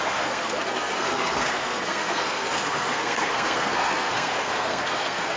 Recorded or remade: remade